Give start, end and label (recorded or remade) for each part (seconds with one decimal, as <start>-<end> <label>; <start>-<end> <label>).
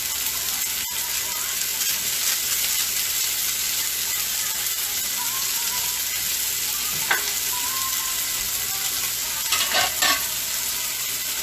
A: 0.0-11.4 recorded